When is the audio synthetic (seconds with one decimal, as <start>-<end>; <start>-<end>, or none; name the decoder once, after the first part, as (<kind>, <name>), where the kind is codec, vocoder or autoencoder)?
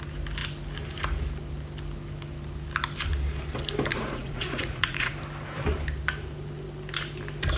3.9-5.1 (vocoder, Vocos)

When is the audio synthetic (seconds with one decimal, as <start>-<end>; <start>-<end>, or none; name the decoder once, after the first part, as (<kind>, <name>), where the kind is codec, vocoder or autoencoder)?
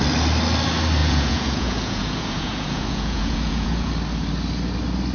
1.0-3.9 (vocoder, Vocos)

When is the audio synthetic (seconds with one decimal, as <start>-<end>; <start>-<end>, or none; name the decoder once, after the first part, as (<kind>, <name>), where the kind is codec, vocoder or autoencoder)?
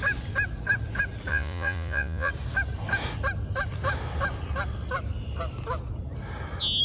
1.3-2.3 (vocoder, Vocos)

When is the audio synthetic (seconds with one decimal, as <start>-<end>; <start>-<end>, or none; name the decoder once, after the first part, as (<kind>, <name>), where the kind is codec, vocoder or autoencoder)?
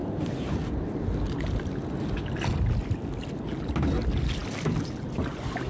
none